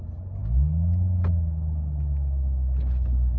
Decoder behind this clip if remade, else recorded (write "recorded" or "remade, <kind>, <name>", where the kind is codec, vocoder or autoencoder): recorded